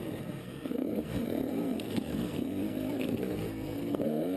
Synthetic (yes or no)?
yes